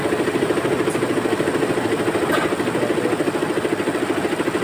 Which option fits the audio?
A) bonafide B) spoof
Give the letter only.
A